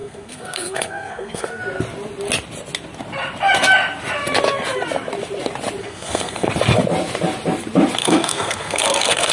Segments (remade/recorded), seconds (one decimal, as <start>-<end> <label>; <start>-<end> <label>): 0.0-1.6 remade; 1.6-5.8 recorded; 5.8-6.5 remade; 6.5-8.0 recorded; 8.0-9.3 remade